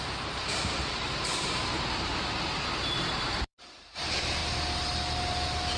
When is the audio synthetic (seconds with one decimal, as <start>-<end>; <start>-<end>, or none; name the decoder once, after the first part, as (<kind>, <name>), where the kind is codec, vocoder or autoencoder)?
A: 0.0-4.4 (vocoder, BigVGAN v2)